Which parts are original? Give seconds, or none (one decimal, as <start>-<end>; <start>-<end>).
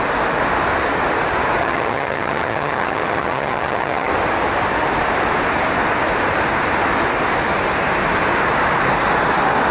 0.0-1.6; 4.1-9.7